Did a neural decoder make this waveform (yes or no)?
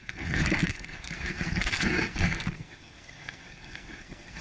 yes